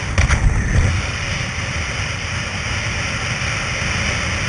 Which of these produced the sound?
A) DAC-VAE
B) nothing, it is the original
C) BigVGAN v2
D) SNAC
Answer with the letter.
B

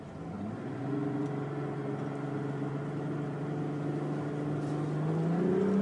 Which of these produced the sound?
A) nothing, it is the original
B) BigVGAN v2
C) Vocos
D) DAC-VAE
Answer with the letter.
A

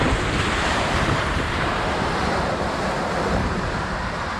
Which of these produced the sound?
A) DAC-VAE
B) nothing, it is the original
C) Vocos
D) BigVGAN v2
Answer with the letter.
D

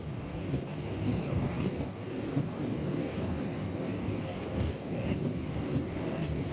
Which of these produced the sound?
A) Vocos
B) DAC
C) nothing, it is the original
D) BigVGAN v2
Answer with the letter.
B